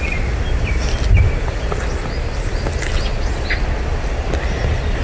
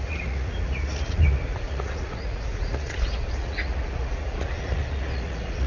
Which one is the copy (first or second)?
second